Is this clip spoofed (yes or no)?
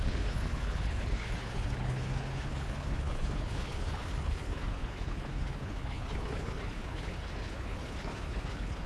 yes